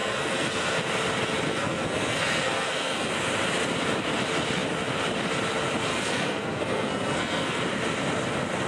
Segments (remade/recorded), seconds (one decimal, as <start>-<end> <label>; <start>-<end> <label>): 0.0-0.8 remade; 0.8-1.5 recorded; 1.5-3.1 remade; 3.1-5.9 recorded; 5.9-7.6 remade; 7.6-8.7 recorded